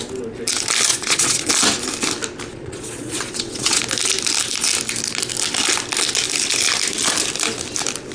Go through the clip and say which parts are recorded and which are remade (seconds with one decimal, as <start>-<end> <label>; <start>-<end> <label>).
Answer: 0.0-0.9 recorded; 0.9-1.5 remade; 1.5-2.5 recorded; 2.5-3.8 remade; 3.8-8.1 recorded